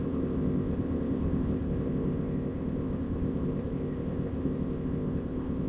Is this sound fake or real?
fake